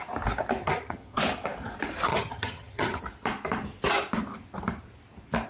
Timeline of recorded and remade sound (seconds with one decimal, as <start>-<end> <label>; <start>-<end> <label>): 0.0-0.6 recorded; 0.6-1.2 remade; 1.2-2.1 recorded; 2.1-3.0 remade; 3.0-5.5 recorded

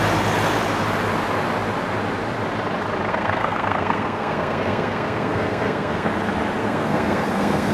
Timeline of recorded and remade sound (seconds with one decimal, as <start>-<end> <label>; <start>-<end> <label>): 0.0-3.1 recorded; 3.1-6.1 remade; 6.1-6.6 recorded; 6.6-7.7 remade

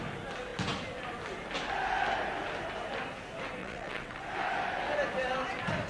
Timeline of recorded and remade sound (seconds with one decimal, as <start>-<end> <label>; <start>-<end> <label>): 0.0-3.6 recorded; 3.6-4.2 remade; 4.2-5.9 recorded